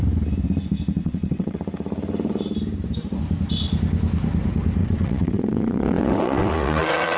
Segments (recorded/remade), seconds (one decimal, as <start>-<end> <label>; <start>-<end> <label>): 0.0-1.0 recorded; 1.0-1.6 remade; 1.6-4.8 recorded; 4.8-7.2 remade